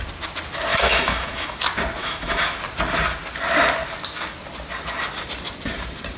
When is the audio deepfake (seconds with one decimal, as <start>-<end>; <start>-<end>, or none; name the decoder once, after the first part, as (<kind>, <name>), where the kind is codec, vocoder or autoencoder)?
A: 0.7-1.6 (autoencoder, DAC-VAE); 2.0-2.6